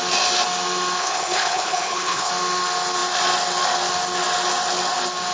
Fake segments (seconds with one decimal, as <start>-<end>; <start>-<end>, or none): 1.0-2.3